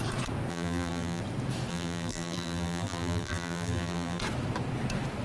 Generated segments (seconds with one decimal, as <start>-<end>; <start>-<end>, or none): 0.5-1.2; 1.7-4.2